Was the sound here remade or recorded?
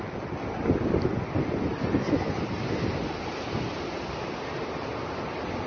recorded